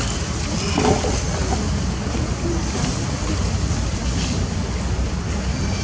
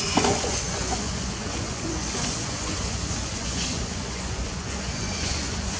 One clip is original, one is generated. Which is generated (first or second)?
second